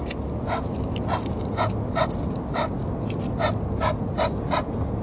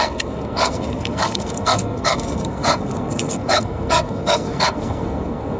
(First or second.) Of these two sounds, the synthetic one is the second